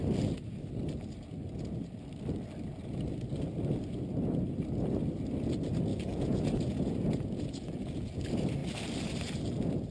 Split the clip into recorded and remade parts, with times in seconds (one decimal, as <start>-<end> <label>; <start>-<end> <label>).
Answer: 0.0-5.9 recorded; 5.9-8.2 remade; 8.2-9.9 recorded